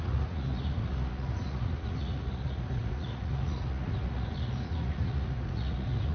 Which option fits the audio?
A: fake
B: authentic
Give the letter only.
A